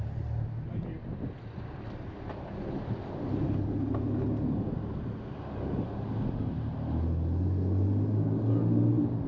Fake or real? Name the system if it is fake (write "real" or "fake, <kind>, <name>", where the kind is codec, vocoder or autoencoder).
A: real